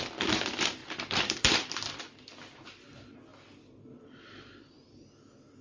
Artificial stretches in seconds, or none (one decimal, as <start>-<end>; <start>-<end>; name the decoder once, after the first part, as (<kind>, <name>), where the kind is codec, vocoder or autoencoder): 0.8-1.9 (vocoder, BigVGAN v2); 3.3-4.9